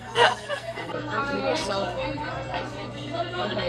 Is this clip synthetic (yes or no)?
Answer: yes